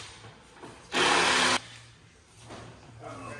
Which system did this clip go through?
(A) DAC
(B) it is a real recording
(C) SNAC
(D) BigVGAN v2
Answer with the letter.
B